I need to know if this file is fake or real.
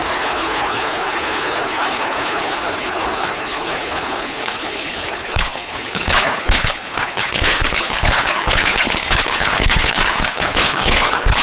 fake